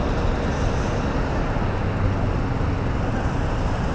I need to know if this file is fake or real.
real